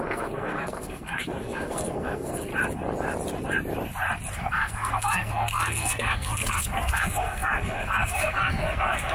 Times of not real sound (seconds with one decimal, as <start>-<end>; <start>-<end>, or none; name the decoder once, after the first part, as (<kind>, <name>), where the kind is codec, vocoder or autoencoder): 0.0-2.5 (codec, SNAC); 4.4-9.1